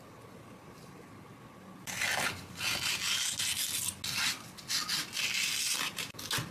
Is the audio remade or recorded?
recorded